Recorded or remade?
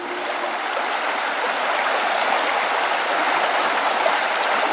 recorded